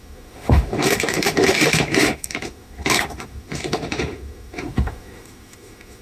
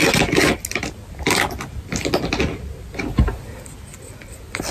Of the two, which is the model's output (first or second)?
first